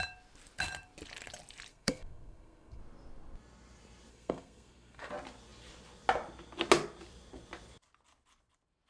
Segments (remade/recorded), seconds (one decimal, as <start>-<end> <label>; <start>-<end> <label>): 0.0-1.7 recorded; 1.7-2.8 remade; 2.8-4.1 recorded; 4.1-5.1 remade; 5.1-8.9 recorded